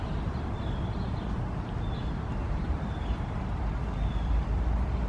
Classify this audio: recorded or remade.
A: recorded